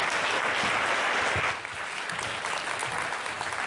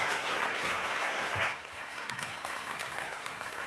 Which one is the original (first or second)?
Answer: first